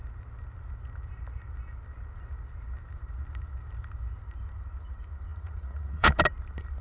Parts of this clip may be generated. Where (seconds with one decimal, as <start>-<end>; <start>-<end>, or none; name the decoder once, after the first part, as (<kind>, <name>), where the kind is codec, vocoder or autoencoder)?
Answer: 5.3-6.2 (vocoder, Vocos)